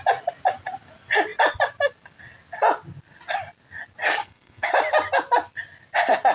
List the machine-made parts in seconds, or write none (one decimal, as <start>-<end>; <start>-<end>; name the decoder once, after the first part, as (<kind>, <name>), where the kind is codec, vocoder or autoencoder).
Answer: 4.2-4.7 (codec, SNAC)